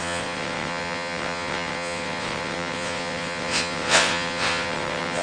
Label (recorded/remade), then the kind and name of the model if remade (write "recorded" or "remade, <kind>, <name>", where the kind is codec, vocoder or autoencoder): remade, vocoder, WaveNeXt